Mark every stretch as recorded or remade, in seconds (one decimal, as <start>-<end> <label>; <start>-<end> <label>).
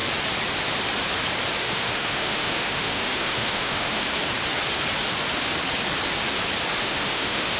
0.0-1.6 recorded; 1.6-4.0 remade; 4.0-6.8 recorded; 6.8-7.6 remade